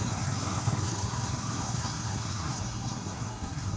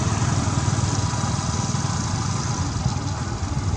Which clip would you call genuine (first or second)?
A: second